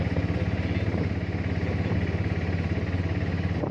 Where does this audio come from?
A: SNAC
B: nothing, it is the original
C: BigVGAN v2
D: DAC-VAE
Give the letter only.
B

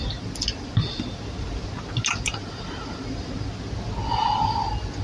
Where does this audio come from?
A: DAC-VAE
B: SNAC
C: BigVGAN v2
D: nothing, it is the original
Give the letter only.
D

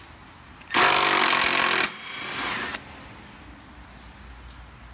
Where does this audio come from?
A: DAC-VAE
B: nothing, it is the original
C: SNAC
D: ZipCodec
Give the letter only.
B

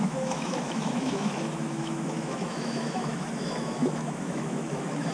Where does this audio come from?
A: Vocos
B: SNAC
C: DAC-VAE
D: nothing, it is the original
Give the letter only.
C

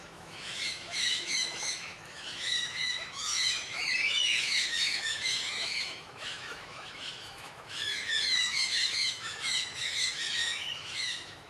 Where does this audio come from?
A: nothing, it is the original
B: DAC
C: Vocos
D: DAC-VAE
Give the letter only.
D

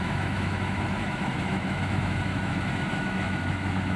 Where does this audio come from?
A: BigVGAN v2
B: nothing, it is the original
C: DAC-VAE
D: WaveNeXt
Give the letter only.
C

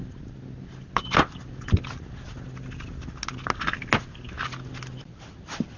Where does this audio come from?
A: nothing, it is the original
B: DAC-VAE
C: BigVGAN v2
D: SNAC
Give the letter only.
A